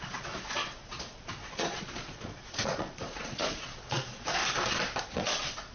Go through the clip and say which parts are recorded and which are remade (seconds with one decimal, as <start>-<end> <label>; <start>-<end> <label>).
0.0-4.4 remade; 4.4-5.0 recorded; 5.0-5.7 remade